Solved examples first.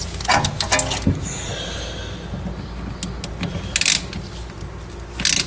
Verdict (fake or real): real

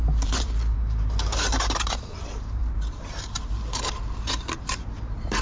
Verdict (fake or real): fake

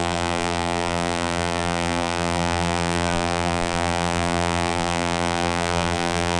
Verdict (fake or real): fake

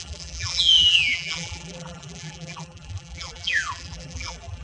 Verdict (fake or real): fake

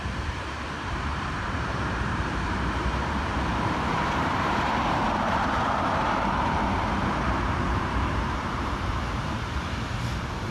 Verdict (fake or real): fake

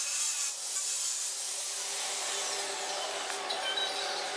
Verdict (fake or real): real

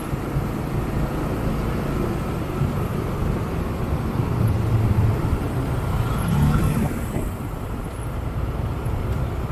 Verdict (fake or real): real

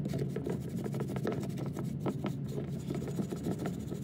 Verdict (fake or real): real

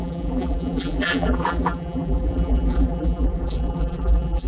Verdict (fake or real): fake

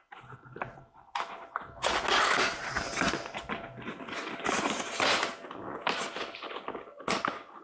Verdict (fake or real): real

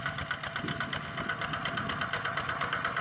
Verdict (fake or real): real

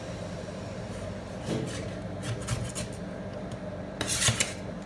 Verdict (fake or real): real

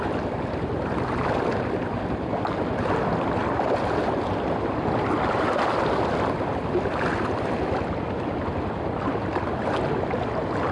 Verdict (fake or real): real